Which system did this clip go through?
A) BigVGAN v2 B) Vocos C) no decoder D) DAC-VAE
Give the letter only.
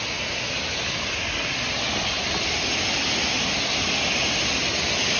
C